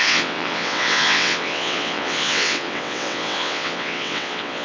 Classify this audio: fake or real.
fake